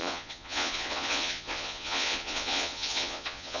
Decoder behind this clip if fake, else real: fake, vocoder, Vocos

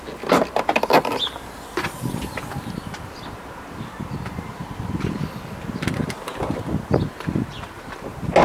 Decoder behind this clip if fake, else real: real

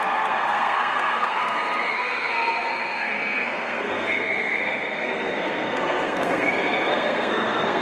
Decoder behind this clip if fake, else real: fake, codec, SNAC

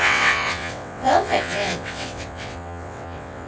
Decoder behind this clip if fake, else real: fake, vocoder, WaveNeXt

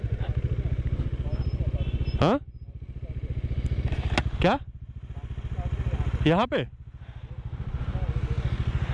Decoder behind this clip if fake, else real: real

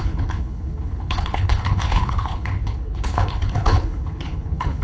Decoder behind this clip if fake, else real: fake, codec, HILCodec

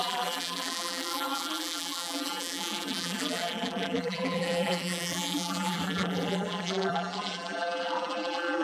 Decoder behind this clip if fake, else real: fake, vocoder, BigVGAN v2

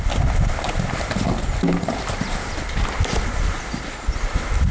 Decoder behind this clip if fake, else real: real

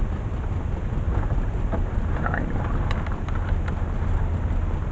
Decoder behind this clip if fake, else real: real